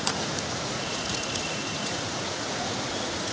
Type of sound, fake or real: fake